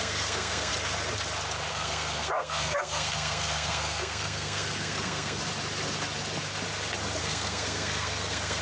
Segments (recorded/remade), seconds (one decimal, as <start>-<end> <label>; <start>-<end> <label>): 0.0-0.7 remade; 0.7-1.7 recorded; 1.7-5.4 remade; 5.4-7.2 recorded; 7.2-8.6 remade